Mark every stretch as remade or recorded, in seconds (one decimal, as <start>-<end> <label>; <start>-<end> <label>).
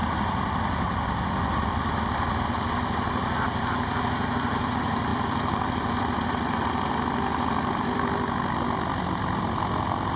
0.0-2.4 remade; 2.4-5.1 recorded; 5.1-9.4 remade; 9.4-10.2 recorded